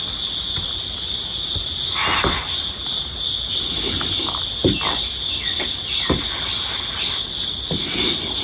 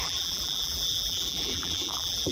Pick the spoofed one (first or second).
second